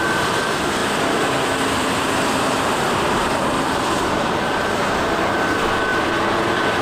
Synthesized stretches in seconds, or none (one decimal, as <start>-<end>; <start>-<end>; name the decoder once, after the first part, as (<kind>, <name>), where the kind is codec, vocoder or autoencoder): 0.8-4.9 (vocoder, BigVGAN v2); 5.9-6.8